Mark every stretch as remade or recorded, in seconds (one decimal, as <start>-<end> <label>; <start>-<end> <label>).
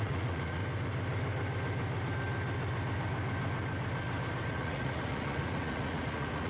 0.0-0.6 remade; 0.6-4.5 recorded; 4.5-6.5 remade